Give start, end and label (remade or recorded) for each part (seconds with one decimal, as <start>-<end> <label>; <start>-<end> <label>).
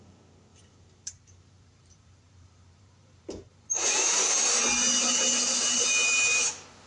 0.0-0.5 recorded; 0.5-4.6 remade; 4.6-6.9 recorded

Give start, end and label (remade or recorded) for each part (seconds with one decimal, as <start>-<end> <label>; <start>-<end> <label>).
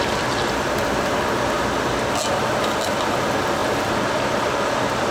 0.0-3.6 recorded; 3.6-5.1 remade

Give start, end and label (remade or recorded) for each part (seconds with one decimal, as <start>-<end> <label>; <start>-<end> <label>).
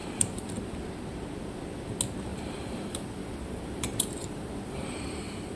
0.0-0.6 remade; 0.6-2.3 recorded; 2.3-5.6 remade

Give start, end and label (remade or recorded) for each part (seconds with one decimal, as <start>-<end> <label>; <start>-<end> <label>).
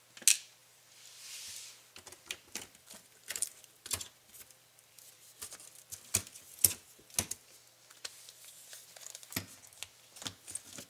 0.0-0.6 recorded; 0.6-5.3 remade; 5.3-7.9 recorded; 7.9-8.7 remade; 8.7-10.9 recorded